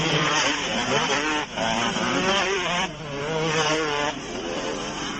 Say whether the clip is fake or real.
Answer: fake